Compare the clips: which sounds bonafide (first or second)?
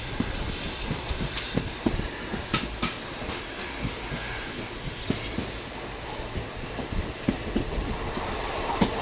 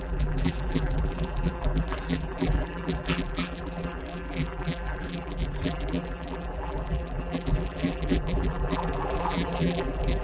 first